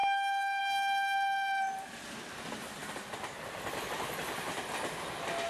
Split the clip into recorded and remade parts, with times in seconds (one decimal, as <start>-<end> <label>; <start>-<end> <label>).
0.0-5.5 recorded